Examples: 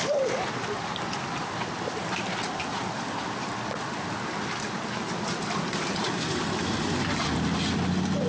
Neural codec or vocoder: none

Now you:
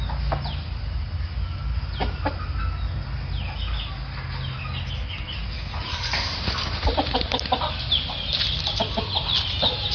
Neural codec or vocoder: none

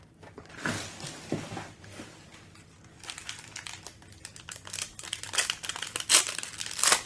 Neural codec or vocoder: none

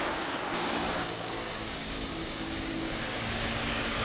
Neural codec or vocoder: codec, DAC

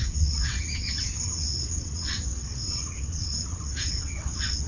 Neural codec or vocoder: vocoder, WaveNeXt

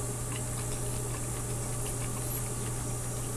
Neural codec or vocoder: none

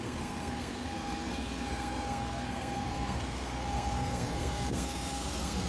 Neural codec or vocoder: codec, SNAC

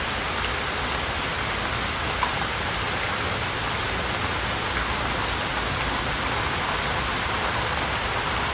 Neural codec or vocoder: none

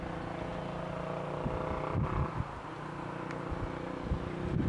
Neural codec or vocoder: none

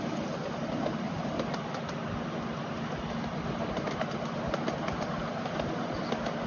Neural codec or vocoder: none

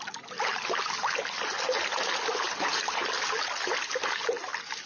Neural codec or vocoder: none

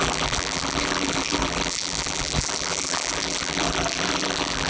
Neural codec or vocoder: vocoder, BigVGAN v2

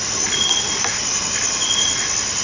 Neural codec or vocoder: none